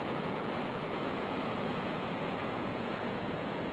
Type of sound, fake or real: fake